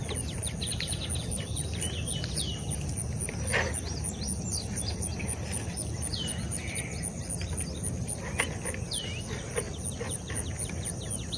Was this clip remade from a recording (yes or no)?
no